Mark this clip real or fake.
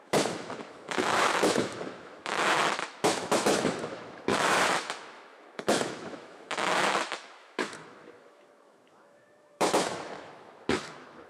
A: fake